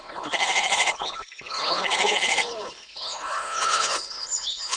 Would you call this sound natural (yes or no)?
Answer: no